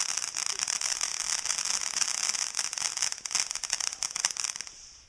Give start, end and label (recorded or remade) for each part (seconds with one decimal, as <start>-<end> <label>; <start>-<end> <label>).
0.0-1.1 remade; 1.1-4.2 recorded; 4.2-5.1 remade